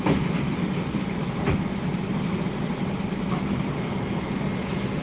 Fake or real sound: real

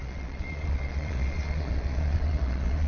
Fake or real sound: fake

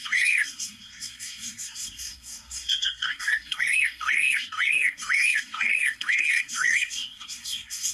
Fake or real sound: fake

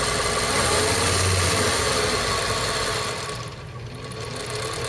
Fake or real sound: real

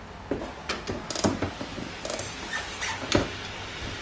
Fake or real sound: real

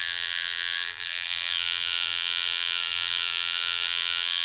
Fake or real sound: fake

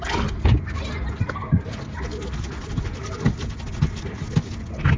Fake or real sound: real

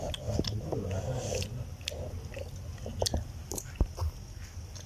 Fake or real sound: real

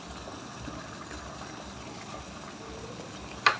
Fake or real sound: real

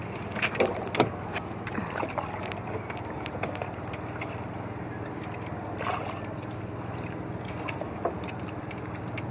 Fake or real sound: real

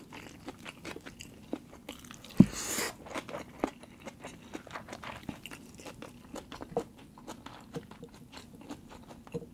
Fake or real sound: real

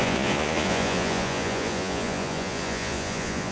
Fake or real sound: fake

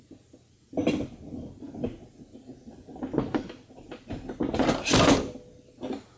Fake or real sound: real